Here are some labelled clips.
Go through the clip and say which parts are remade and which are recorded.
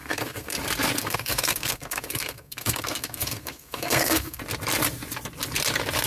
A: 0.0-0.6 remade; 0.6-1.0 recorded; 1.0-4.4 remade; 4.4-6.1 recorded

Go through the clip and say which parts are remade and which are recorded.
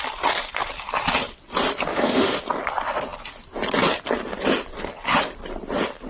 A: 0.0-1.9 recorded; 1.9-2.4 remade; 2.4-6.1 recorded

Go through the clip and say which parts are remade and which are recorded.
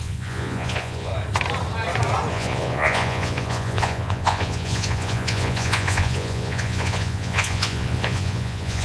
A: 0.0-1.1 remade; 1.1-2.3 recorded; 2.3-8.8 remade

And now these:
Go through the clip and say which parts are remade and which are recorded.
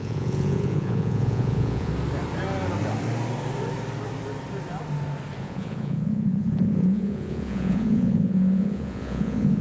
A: 0.0-1.9 remade; 1.9-5.4 recorded; 5.4-9.6 remade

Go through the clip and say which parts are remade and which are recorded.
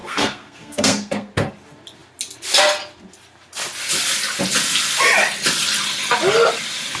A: 0.0-1.3 remade; 1.3-7.0 recorded